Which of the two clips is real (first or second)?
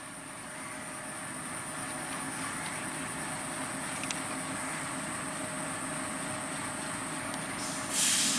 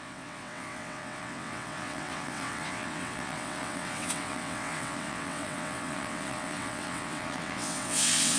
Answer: first